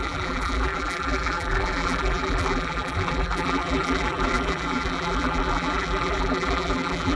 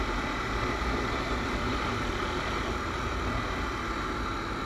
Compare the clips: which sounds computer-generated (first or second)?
first